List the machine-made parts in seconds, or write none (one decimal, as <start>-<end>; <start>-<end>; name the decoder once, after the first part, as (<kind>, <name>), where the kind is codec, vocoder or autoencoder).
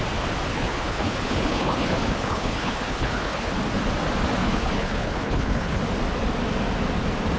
0.5-3.5 (codec, HILCodec); 4.4-5.8